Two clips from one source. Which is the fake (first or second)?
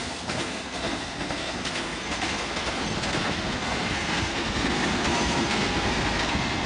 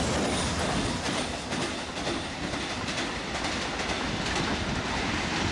first